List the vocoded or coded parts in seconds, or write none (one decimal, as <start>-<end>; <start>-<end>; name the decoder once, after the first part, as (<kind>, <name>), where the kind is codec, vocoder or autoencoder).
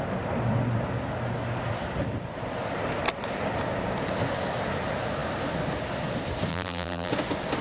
6.5-7.1 (vocoder, BigVGAN v2)